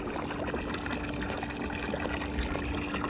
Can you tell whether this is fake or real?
real